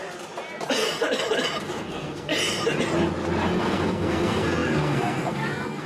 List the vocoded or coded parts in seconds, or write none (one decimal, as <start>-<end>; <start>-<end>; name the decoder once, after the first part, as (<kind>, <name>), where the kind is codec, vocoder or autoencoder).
1.6-2.3 (codec, SNAC); 3.6-5.9